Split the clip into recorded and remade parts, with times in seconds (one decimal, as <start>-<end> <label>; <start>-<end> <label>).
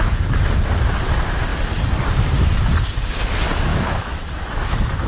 0.0-3.7 recorded; 3.7-5.1 remade